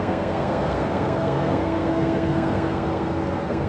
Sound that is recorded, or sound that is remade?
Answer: remade